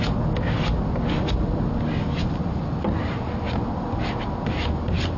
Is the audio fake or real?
real